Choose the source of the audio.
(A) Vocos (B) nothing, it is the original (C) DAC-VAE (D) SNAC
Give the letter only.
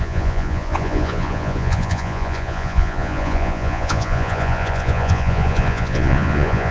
A